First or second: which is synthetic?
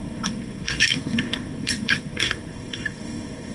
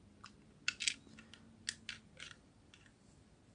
first